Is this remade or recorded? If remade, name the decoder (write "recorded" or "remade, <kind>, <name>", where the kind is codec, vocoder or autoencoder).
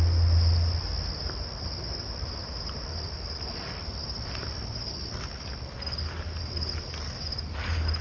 recorded